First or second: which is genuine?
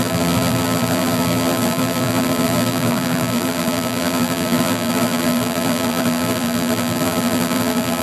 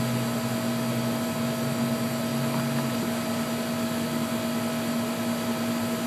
second